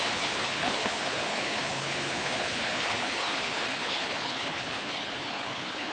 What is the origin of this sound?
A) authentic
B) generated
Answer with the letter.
B